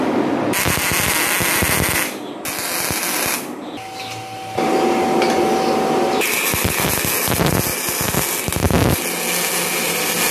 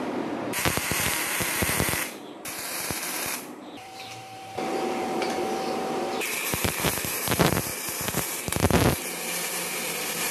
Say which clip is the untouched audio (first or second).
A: first